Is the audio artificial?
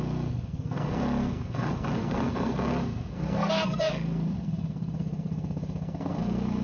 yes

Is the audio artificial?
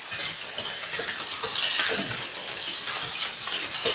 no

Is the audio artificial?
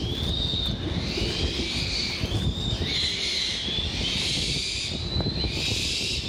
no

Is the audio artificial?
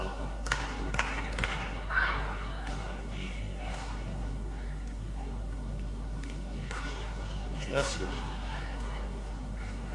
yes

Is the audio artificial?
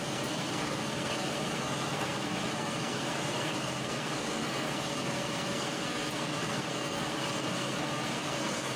yes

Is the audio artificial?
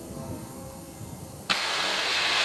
yes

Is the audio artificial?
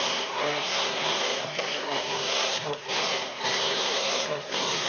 yes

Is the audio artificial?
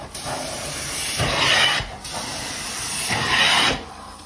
no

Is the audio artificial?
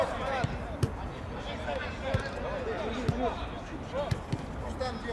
no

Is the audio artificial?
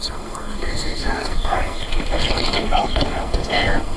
yes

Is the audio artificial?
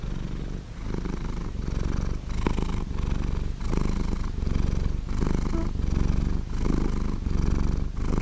no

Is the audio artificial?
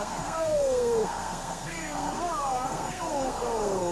yes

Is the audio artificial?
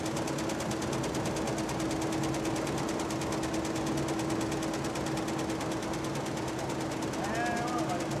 no